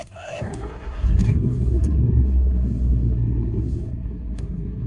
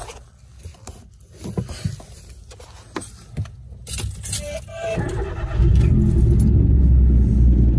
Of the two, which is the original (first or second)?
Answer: second